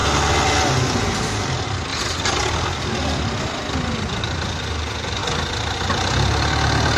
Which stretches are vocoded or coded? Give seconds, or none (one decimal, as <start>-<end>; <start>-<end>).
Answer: none